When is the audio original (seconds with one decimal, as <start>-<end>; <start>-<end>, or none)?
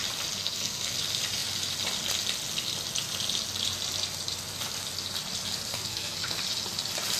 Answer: 0.0-0.4; 0.9-5.7; 6.4-7.2